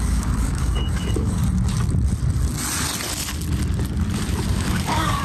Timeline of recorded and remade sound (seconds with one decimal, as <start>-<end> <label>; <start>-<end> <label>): 0.0-1.4 remade; 1.4-4.5 recorded; 4.5-5.2 remade